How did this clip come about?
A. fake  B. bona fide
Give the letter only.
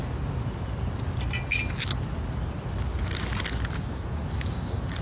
B